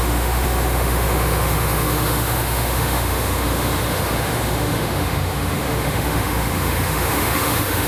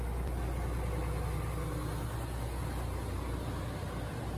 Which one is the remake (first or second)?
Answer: first